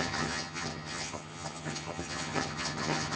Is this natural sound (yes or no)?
no